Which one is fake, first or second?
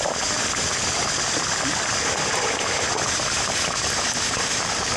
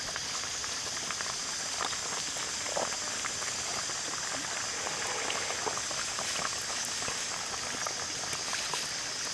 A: first